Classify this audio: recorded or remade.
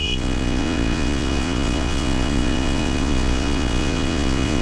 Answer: remade